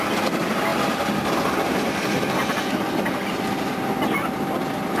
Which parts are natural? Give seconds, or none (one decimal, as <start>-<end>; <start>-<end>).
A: 0.0-5.0

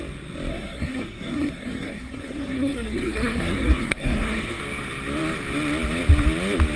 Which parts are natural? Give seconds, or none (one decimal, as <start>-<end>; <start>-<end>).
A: 0.0-0.5; 4.6-6.8

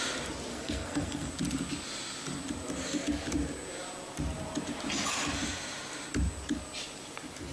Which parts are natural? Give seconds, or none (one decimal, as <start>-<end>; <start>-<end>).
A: 0.0-0.5; 1.3-7.5